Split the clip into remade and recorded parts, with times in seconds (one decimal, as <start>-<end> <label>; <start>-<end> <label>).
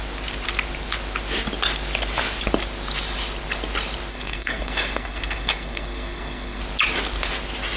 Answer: 0.0-4.1 recorded; 4.1-6.6 remade; 6.6-7.8 recorded